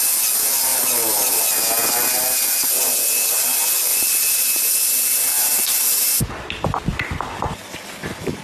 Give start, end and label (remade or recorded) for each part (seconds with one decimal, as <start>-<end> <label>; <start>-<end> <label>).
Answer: 0.0-3.9 recorded; 3.9-4.4 remade; 4.4-5.4 recorded; 5.4-6.2 remade; 6.2-8.4 recorded